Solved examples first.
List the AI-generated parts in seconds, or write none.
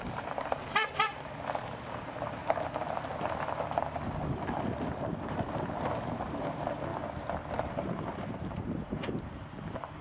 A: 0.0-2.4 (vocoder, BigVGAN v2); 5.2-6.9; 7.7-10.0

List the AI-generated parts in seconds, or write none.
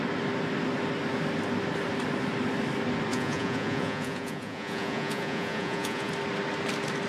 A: 3.1-6.1 (vocoder, Vocos)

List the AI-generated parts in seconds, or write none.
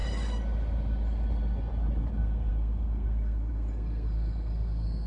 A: 2.1-5.1 (codec, SNAC)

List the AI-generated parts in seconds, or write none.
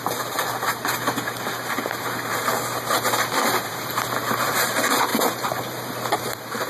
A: 0.0-3.1 (vocoder, BigVGAN v2); 3.7-6.7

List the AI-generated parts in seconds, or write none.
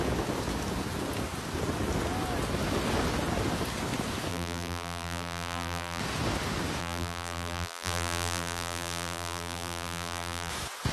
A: 4.3-6.0 (vocoder, BigVGAN v2); 6.8-10.5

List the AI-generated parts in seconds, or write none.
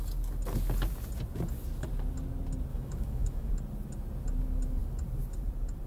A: 2.7-3.5 (autoencoder, DAC-VAE)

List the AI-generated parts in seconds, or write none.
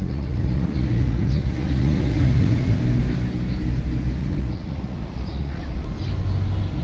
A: 0.0-2.8 (vocoder, Vocos); 4.2-5.6